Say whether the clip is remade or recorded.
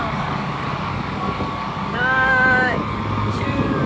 remade